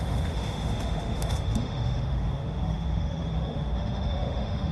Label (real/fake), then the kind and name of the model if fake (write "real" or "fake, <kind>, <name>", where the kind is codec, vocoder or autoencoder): fake, autoencoder, DAC-VAE